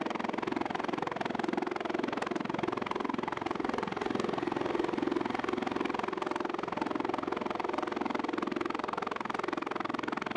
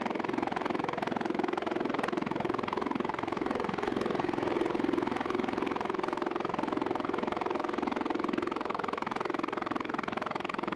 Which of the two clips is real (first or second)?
first